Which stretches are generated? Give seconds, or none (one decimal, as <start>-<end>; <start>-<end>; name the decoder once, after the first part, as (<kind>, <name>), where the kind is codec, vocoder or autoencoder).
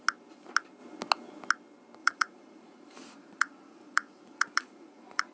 2.0-5.3 (vocoder, Vocos)